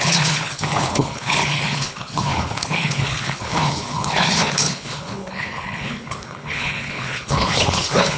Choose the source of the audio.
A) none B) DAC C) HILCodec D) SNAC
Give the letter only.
C